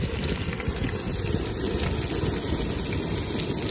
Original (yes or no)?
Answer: yes